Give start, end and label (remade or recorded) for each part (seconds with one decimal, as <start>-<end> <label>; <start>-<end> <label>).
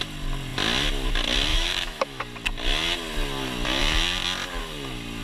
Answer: 0.0-1.5 recorded; 1.5-2.2 remade; 2.2-5.2 recorded